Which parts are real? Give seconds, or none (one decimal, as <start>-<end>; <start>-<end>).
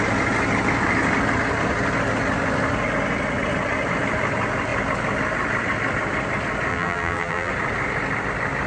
0.0-6.7; 7.5-8.7